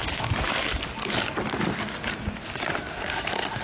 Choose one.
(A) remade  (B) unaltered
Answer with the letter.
B